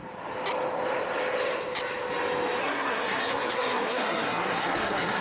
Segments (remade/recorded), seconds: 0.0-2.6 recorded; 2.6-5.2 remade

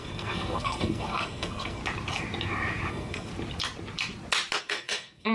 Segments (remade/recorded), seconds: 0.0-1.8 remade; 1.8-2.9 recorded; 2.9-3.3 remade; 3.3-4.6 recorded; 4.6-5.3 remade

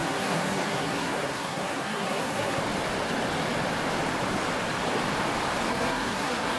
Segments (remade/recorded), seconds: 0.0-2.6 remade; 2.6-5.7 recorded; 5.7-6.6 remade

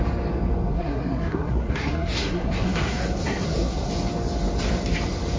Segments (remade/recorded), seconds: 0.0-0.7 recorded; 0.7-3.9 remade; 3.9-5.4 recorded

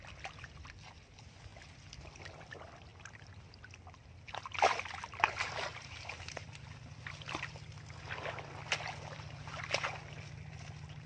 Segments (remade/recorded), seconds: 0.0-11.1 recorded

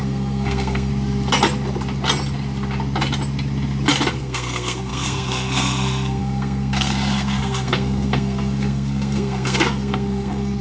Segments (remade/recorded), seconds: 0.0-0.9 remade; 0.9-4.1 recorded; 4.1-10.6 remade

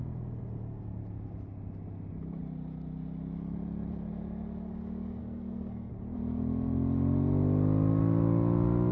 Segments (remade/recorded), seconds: 0.0-5.2 recorded; 5.2-5.9 remade; 5.9-8.9 recorded